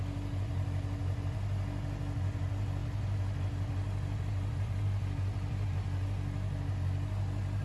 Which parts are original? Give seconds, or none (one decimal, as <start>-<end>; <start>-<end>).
0.0-7.6